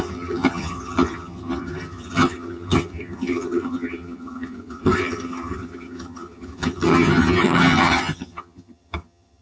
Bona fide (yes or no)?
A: no